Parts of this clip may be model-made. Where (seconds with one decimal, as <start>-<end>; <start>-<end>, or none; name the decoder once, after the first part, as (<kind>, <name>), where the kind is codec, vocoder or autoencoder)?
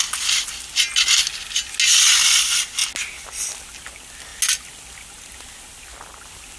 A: none